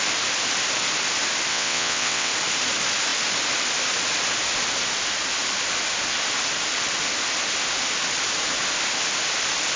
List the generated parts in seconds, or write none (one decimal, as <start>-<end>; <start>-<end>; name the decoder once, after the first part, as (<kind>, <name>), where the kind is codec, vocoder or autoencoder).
1.5-2.3 (vocoder, WaveNeXt)

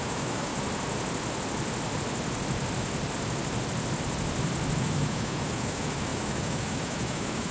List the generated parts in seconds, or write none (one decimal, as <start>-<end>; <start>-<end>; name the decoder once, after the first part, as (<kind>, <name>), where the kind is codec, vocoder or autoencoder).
0.0-0.5 (autoencoder, DAC-VAE); 4.8-7.5

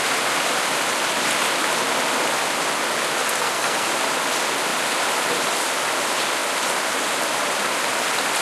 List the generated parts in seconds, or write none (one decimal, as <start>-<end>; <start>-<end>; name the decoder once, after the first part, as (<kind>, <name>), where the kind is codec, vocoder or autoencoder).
3.2-3.9 (codec, SNAC)